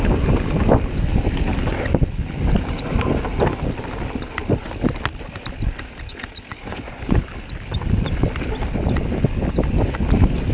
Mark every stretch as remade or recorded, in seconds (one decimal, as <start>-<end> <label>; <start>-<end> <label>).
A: 0.0-6.5 recorded; 6.5-7.3 remade; 7.3-10.5 recorded